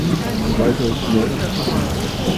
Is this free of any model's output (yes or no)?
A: yes